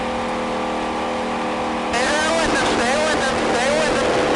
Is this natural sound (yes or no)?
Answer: yes